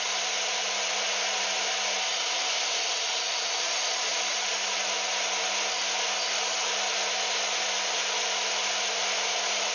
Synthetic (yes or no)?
no